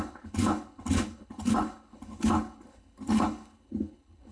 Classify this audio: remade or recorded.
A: remade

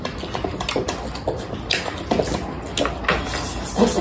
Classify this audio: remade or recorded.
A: recorded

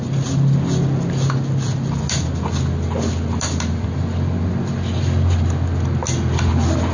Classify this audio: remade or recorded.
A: recorded